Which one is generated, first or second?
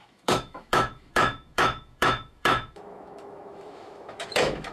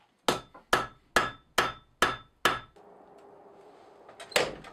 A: first